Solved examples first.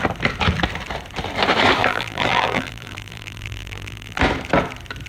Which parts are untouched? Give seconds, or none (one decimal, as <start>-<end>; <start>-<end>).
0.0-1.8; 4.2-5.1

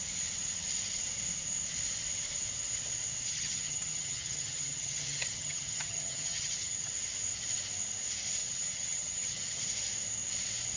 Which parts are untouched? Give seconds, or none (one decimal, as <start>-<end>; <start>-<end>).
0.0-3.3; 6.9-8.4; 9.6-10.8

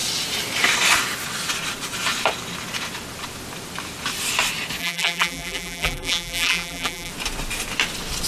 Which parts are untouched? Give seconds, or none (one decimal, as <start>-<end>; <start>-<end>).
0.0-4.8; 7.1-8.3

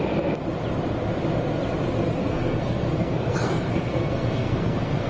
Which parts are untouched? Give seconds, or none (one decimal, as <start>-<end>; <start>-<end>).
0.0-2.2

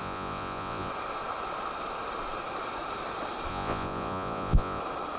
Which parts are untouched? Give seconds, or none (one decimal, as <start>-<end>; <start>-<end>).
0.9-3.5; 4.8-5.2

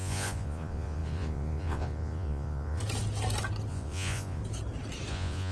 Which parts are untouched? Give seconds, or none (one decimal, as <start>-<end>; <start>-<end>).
2.8-3.7; 4.4-5.1

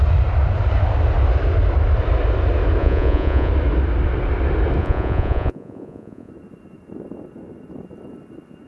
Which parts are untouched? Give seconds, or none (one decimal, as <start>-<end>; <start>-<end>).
0.0-2.8; 3.5-4.8; 6.3-8.7